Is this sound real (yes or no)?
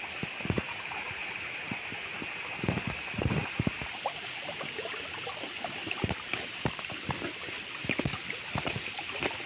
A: yes